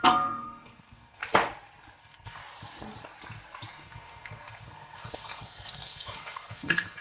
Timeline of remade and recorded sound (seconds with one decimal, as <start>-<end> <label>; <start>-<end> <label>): 0.0-1.2 remade; 1.2-2.0 recorded; 2.0-2.4 remade; 2.4-3.7 recorded; 3.7-7.0 remade